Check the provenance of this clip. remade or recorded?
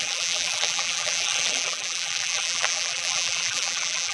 remade